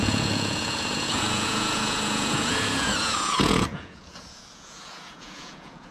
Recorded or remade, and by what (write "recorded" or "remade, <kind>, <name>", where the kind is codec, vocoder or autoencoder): remade, vocoder, Vocos